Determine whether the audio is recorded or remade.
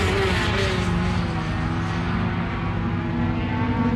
recorded